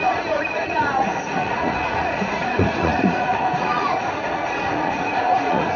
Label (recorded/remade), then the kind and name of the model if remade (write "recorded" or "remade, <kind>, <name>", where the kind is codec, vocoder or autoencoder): remade, vocoder, Vocos